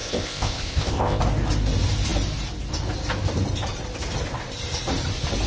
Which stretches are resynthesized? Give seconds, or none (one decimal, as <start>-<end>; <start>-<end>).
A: 0.0-1.2